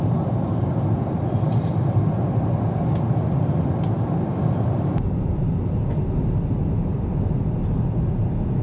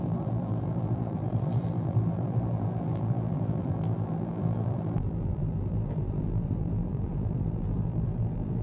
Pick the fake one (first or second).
second